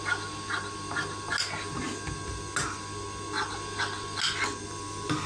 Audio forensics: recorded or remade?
recorded